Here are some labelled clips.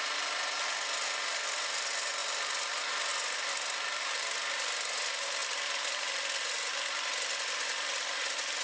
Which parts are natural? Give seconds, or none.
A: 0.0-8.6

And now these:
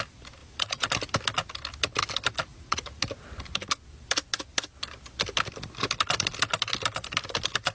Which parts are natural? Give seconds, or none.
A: 0.0-0.4; 0.9-2.5; 3.0-7.7